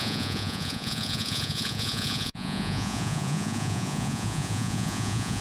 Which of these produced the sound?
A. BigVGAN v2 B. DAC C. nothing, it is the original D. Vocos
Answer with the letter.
D